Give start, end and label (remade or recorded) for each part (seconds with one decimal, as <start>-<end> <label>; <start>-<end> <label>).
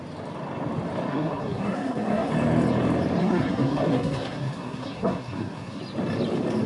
0.0-1.1 recorded; 1.1-2.3 remade; 2.3-3.2 recorded; 3.2-5.8 remade; 5.8-6.7 recorded